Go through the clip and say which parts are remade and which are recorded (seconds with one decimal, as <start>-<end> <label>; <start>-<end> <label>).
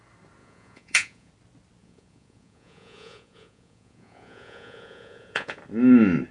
0.0-0.4 recorded; 0.4-1.3 remade; 1.3-1.8 recorded; 1.8-5.6 remade; 5.6-6.3 recorded